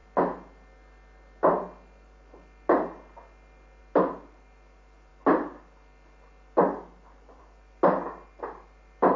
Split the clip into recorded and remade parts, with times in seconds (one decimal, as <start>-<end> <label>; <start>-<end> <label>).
0.0-3.8 recorded; 3.8-5.1 remade; 5.1-7.4 recorded; 7.4-9.2 remade